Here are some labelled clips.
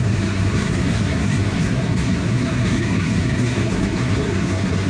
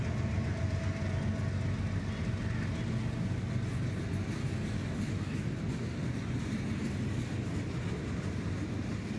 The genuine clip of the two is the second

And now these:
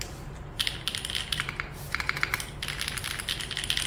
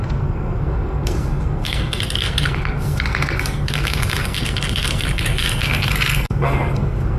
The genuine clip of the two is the first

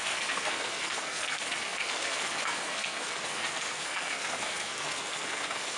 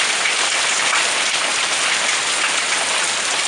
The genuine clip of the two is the second